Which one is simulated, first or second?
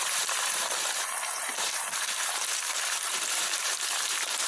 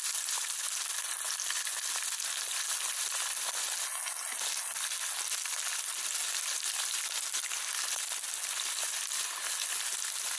first